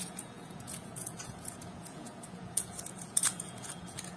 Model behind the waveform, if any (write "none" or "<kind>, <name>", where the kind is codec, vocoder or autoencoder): vocoder, Vocos